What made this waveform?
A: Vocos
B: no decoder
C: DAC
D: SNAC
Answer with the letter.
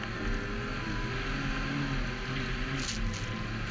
B